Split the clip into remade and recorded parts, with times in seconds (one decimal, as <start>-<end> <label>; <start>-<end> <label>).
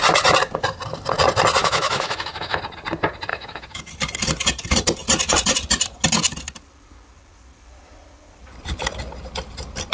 0.0-1.6 recorded; 1.6-2.6 remade; 2.6-3.3 recorded; 3.3-3.9 remade; 3.9-9.9 recorded